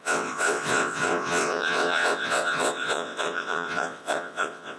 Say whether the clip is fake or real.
fake